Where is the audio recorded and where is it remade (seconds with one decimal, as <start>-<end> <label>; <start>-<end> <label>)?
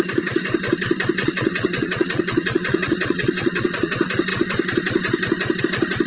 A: 0.0-1.2 recorded; 1.2-3.9 remade; 3.9-6.1 recorded